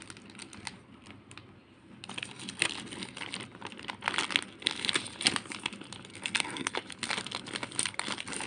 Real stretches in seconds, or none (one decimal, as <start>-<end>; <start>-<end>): 0.0-6.1; 6.7-8.5